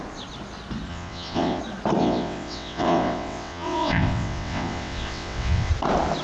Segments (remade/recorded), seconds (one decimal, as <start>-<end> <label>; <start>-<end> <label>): 0.0-0.9 recorded; 0.9-1.6 remade; 1.6-2.0 recorded; 2.0-5.7 remade; 5.7-6.2 recorded